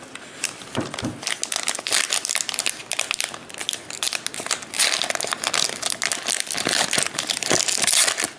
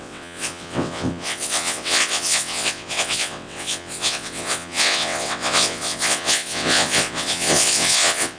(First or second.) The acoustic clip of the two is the first